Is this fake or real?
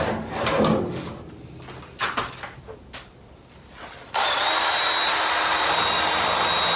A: real